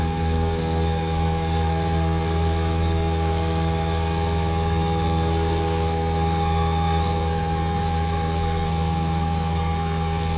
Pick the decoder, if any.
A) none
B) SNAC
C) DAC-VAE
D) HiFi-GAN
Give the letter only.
B